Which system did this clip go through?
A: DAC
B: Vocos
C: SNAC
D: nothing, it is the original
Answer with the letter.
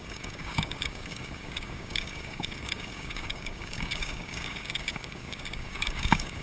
A